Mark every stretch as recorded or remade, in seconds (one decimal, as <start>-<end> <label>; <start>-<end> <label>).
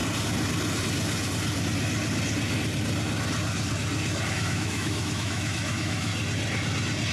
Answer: 0.0-4.3 recorded; 4.3-6.1 remade; 6.1-7.1 recorded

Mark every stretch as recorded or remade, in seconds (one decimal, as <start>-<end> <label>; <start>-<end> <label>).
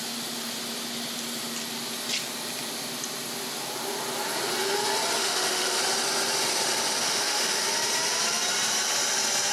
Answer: 0.0-5.2 recorded; 5.2-5.8 remade; 5.8-7.0 recorded; 7.0-7.6 remade; 7.6-9.5 recorded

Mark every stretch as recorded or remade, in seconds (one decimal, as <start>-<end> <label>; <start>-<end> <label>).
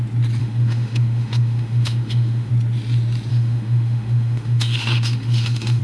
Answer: 0.0-0.4 recorded; 0.4-2.5 remade; 2.5-3.3 recorded; 3.3-5.8 remade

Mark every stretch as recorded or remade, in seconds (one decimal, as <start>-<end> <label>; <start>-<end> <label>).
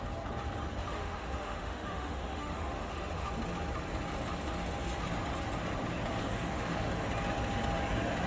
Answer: 0.0-0.8 recorded; 0.8-3.3 remade; 3.3-6.2 recorded; 6.2-6.9 remade; 6.9-8.3 recorded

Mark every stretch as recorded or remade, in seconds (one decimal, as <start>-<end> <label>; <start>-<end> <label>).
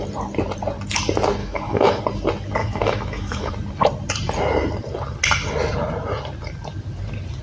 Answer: 0.0-1.4 recorded; 1.4-2.0 remade; 2.0-2.6 recorded; 2.6-3.5 remade; 3.5-7.4 recorded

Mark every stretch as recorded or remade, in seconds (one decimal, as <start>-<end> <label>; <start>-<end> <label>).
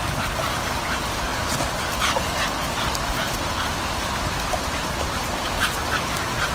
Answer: 0.0-6.5 recorded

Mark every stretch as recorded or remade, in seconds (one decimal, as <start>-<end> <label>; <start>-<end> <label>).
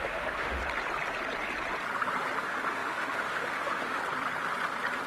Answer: 0.0-0.6 remade; 0.6-2.4 recorded; 2.4-4.0 remade; 4.0-5.1 recorded